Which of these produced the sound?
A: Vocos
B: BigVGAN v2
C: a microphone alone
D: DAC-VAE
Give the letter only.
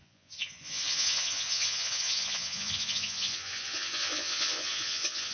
A